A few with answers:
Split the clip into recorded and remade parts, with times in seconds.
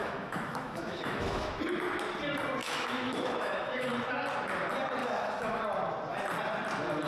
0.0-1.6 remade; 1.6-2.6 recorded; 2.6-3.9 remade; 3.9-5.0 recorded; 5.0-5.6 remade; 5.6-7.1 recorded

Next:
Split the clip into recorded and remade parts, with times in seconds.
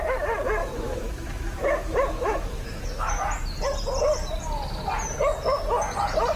0.0-0.6 recorded; 0.6-3.1 remade; 3.1-6.4 recorded